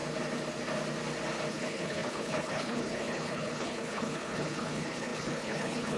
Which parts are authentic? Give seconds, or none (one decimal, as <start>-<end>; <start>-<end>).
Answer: 0.0-1.5